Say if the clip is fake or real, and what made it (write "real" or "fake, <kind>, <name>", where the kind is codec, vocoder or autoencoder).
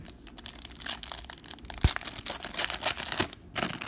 real